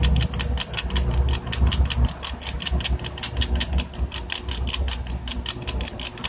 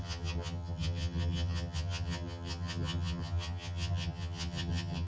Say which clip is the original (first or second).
first